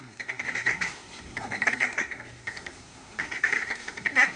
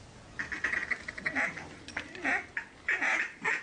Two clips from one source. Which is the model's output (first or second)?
first